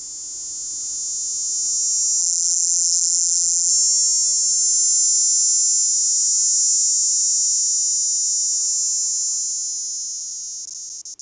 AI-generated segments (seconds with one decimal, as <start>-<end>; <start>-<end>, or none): 2.2-3.7

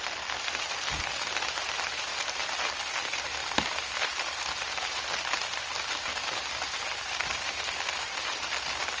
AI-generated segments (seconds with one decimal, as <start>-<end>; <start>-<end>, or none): 0.0-2.1; 2.7-9.0